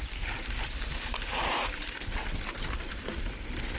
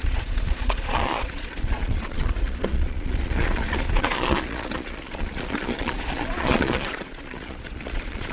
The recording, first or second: first